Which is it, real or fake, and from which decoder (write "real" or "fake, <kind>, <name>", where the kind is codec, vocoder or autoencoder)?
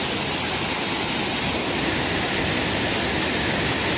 real